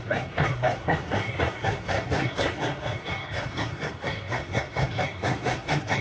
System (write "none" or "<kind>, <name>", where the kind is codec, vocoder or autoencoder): codec, SNAC